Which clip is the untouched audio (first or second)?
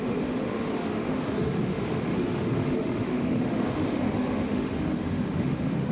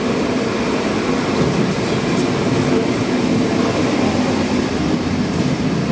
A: second